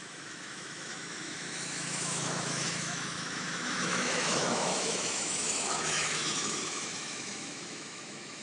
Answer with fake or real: fake